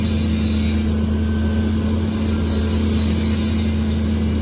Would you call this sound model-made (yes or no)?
no